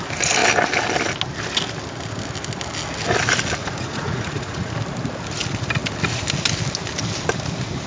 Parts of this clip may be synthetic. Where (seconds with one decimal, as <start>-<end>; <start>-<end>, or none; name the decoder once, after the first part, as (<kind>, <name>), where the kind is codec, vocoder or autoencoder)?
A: 3.6-4.7 (vocoder, Vocos)